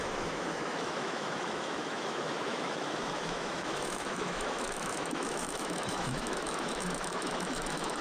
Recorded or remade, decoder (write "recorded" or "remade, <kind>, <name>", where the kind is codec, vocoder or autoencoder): remade, autoencoder, DAC-VAE